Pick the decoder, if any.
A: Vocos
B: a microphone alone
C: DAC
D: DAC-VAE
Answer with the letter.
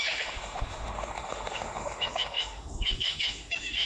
D